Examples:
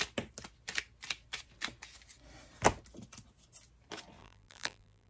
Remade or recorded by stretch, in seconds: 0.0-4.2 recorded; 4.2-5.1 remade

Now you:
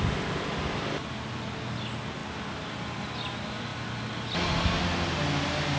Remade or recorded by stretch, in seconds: 0.0-5.8 recorded

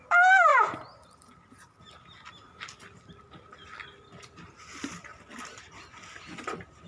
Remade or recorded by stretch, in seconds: 0.0-6.9 recorded